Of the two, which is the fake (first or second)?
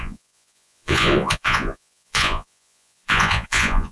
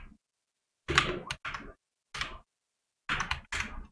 first